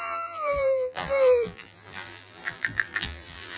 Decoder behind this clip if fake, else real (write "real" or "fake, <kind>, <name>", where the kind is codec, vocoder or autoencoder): fake, vocoder, BigVGAN v2